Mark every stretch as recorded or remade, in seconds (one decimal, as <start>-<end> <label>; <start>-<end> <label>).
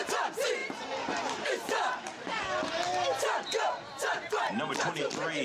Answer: 0.0-0.6 recorded; 0.6-2.4 remade; 2.4-5.4 recorded